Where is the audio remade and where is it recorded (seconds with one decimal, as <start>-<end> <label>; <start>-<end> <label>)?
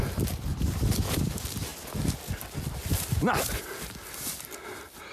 0.0-5.1 recorded